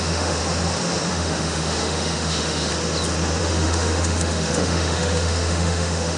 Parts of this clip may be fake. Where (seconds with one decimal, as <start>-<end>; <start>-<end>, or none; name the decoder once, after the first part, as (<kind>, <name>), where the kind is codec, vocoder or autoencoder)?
0.0-0.4 (autoencoder, DAC-VAE); 1.1-2.7; 3.4-6.2